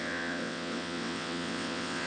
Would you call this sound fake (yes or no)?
yes